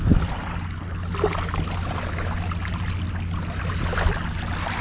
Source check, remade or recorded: recorded